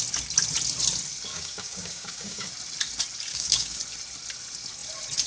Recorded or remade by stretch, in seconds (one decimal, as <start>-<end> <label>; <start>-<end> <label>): 0.0-1.3 recorded; 1.3-2.5 remade; 2.5-3.3 recorded; 3.3-3.8 remade; 3.8-5.3 recorded

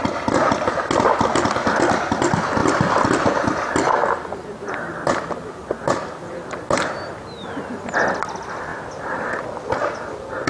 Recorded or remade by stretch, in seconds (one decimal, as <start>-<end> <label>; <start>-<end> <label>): 0.0-5.8 recorded; 5.8-6.6 remade; 6.6-8.7 recorded; 8.7-10.5 remade

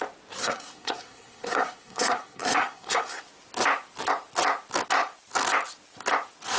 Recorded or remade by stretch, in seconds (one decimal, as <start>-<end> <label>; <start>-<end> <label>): 0.0-0.4 recorded; 0.4-3.2 remade; 3.2-6.6 recorded

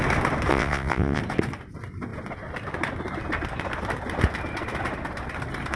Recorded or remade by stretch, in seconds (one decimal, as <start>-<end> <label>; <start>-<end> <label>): 0.0-0.5 recorded; 0.5-1.2 remade; 1.2-5.8 recorded